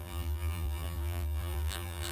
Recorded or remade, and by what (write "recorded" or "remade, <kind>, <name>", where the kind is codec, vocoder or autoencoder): remade, vocoder, BigVGAN v2